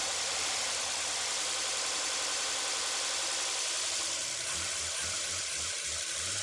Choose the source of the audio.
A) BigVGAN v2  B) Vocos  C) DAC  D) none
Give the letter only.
A